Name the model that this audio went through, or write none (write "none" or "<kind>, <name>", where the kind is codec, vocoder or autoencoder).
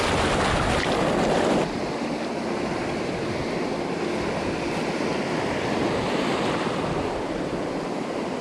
none